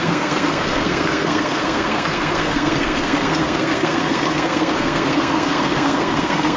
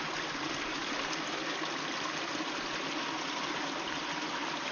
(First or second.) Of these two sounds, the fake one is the first